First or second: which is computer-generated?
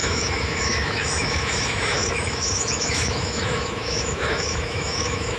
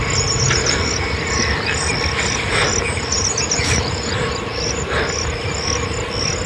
first